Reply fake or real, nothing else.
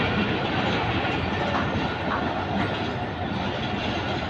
real